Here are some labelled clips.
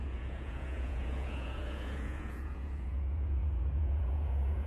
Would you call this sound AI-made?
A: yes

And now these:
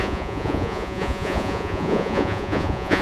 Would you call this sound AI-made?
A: yes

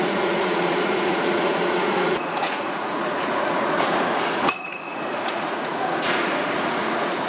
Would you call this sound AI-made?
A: yes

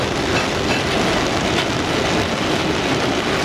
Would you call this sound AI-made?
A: no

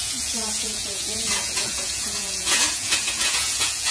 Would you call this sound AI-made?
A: yes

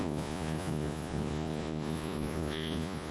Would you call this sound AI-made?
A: yes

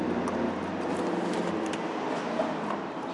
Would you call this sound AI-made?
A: no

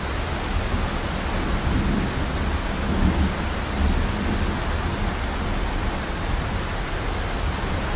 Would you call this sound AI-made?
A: no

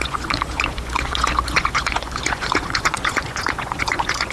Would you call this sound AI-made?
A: yes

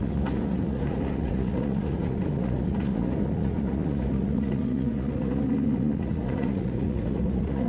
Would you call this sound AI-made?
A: yes